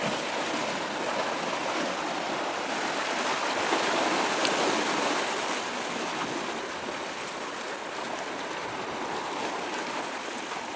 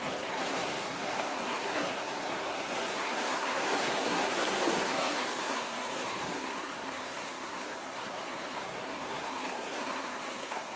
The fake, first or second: second